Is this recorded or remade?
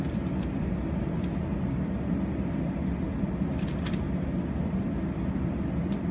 recorded